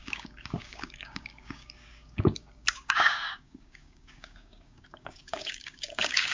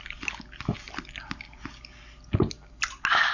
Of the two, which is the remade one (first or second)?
first